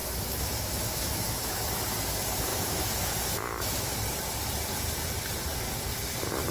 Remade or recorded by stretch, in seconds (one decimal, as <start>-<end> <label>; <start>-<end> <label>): 0.0-1.8 remade; 1.8-2.5 recorded; 2.5-4.0 remade; 4.0-6.5 recorded